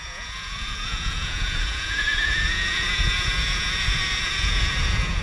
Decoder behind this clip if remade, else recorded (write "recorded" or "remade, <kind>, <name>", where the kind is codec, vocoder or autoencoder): remade, vocoder, Vocos